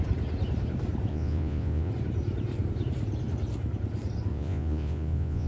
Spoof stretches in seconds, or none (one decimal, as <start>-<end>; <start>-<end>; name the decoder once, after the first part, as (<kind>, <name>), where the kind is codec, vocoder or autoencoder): 1.1-1.9 (vocoder, Vocos); 4.3-5.5